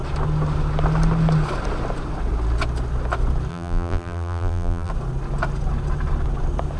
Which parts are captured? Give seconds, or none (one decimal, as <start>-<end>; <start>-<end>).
0.0-3.5; 4.9-6.8